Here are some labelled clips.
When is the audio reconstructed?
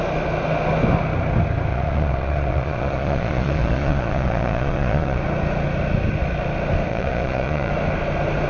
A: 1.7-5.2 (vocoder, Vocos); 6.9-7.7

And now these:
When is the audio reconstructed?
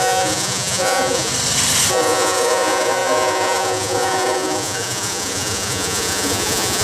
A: 0.0-1.3 (vocoder, Vocos); 1.9-6.8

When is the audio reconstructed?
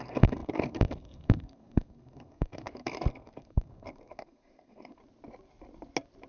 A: 0.0-5.0 (codec, SNAC)